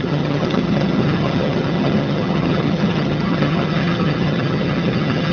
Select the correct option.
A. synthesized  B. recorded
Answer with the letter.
A